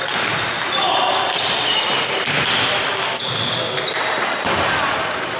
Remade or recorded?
recorded